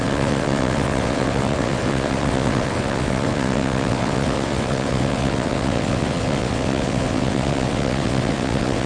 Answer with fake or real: fake